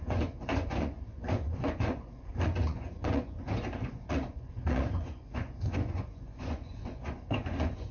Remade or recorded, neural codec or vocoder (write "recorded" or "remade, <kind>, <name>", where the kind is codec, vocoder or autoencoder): remade, vocoder, Vocos